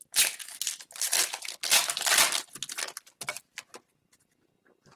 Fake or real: real